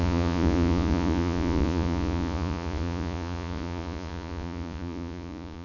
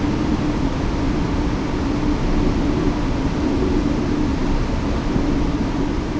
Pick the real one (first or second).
second